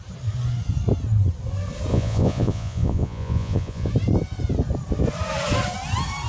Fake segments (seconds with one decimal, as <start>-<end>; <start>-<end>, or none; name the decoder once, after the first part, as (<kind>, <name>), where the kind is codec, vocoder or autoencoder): 1.9-3.9 (vocoder, Vocos)